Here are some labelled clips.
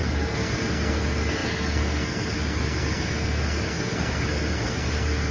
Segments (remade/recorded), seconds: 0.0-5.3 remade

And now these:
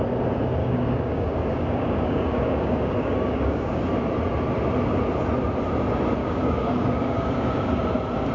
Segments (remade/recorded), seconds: 0.0-0.6 recorded; 0.6-3.9 remade; 3.9-6.2 recorded; 6.2-7.7 remade; 7.7-8.3 recorded

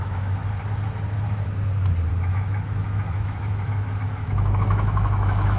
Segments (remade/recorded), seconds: 0.0-0.4 remade; 0.4-2.1 recorded; 2.1-5.6 remade

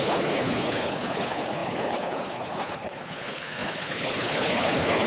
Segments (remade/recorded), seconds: 0.0-5.1 remade

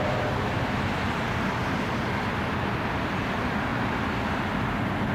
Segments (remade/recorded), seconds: 0.0-5.1 recorded